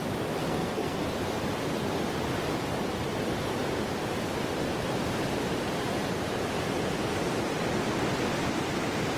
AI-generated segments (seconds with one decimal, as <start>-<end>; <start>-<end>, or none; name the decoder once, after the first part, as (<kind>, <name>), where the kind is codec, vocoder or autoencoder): 0.4-1.0 (codec, SNAC)